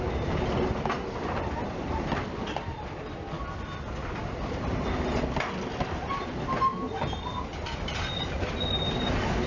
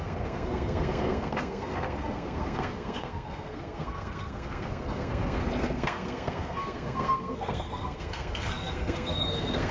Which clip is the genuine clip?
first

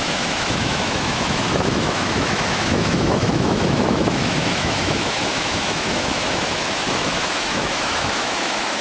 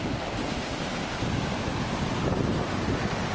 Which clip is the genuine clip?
second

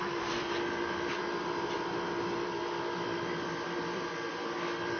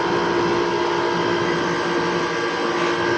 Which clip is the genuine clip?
second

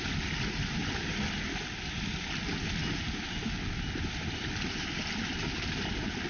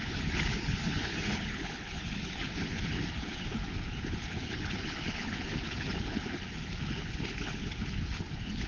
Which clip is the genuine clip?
first